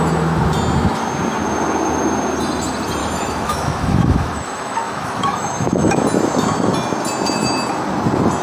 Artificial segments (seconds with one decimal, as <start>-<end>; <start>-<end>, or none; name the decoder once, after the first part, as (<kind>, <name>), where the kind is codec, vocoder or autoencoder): 3.0-5.9 (autoencoder, DAC-VAE)